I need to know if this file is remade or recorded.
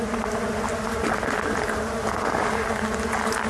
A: recorded